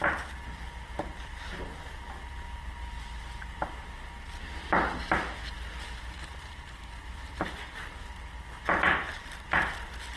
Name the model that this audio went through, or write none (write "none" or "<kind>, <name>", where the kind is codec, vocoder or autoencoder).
none